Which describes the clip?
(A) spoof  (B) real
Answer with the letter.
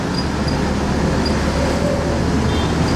B